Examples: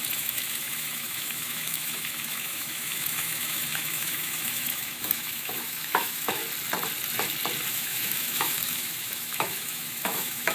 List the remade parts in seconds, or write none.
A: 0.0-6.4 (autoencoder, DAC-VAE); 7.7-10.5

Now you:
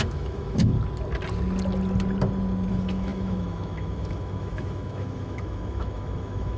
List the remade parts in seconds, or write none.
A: 0.0-0.7 (autoencoder, DAC-VAE); 2.7-6.6

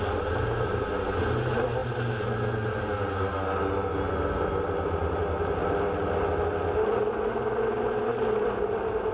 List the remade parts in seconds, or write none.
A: none

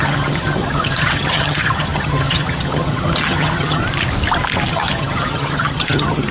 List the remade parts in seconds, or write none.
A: 0.0-3.8 (vocoder, HiFi-GAN); 4.7-6.3